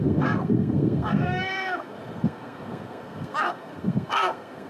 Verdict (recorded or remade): remade